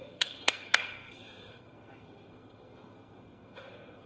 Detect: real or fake fake